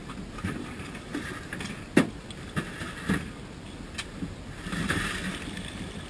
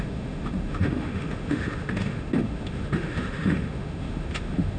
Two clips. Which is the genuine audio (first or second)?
first